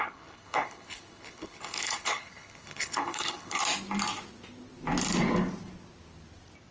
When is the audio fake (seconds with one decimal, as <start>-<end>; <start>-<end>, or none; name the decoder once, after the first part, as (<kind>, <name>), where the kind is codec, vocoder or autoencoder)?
0.0-3.6 (codec, HILCodec)